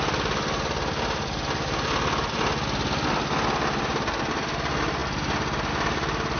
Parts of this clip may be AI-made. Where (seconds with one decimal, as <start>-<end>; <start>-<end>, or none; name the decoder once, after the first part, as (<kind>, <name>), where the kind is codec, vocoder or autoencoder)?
none